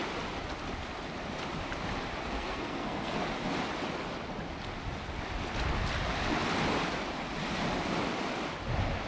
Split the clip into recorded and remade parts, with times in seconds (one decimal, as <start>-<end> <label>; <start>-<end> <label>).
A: 0.0-2.2 recorded; 2.2-3.2 remade; 3.2-9.1 recorded